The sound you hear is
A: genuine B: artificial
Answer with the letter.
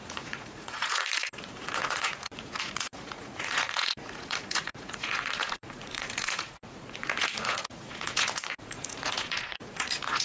B